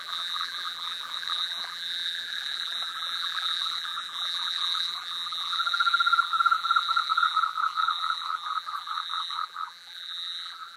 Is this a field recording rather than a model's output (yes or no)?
no